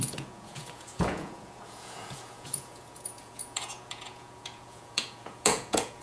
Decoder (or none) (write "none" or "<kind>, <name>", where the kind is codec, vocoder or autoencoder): vocoder, Vocos